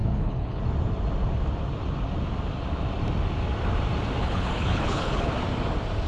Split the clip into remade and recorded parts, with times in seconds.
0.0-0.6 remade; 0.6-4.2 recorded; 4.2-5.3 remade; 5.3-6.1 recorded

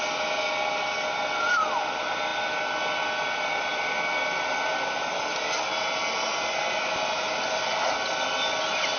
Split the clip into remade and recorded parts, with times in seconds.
0.0-9.0 recorded